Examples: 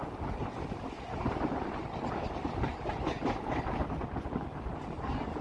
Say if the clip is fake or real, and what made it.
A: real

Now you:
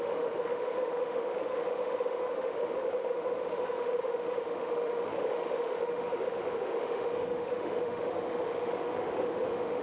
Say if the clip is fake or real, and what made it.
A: fake, autoencoder, DAC-VAE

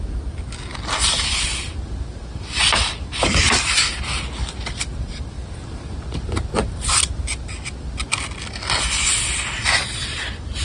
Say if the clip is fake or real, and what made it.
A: real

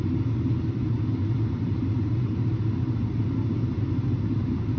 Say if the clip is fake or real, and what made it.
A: real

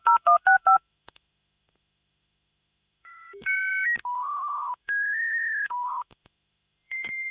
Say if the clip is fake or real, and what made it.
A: fake, autoencoder, DAC-VAE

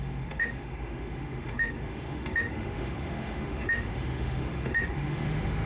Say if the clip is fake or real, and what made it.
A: fake, autoencoder, DAC-VAE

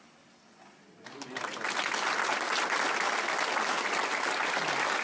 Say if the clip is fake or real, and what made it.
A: real